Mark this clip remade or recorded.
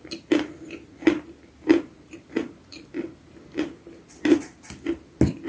recorded